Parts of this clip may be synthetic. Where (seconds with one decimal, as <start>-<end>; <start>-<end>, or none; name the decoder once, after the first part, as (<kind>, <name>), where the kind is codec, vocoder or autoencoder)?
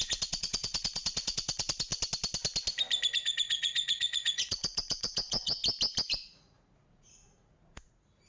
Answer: 0.0-1.9 (vocoder, Vocos); 3.1-5.6; 6.1-8.3